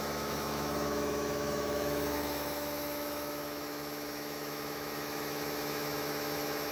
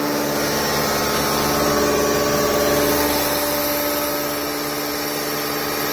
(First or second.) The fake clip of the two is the first